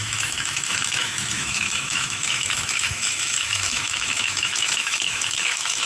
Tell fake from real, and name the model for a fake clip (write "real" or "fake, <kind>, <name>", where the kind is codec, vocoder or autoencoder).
fake, autoencoder, DAC-VAE